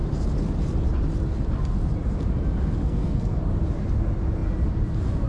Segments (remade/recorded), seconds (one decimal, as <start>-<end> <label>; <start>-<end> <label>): 0.0-2.8 recorded; 2.8-3.4 remade; 3.4-5.3 recorded